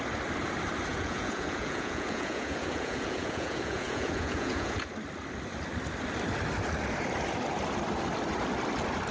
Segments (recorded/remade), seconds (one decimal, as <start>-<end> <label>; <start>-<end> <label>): 0.0-0.9 recorded; 0.9-4.9 remade; 4.9-9.1 recorded